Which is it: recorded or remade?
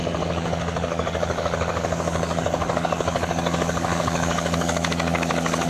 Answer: remade